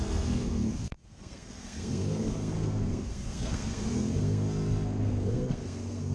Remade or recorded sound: remade